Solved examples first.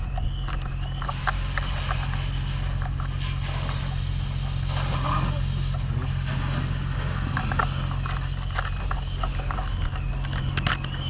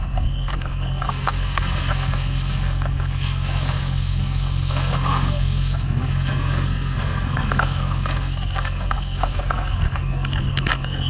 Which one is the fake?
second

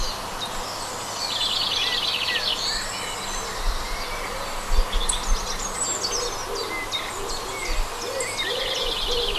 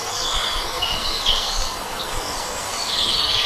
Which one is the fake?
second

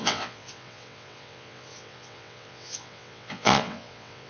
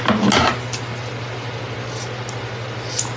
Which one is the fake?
first